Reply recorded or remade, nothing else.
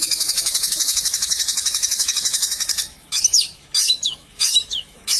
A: remade